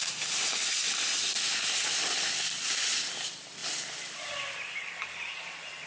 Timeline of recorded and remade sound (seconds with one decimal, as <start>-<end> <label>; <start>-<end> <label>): 0.0-5.9 recorded